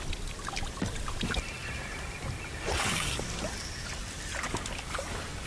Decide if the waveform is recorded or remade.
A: recorded